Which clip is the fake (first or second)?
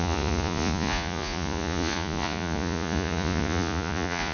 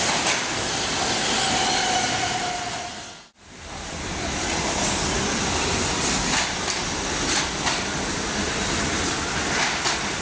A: first